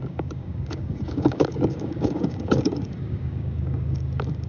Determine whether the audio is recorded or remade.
remade